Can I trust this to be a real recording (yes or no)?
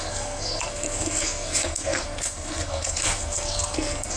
no